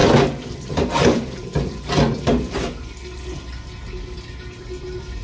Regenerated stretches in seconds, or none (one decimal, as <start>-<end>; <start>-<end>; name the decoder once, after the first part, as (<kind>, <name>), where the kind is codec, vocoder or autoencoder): none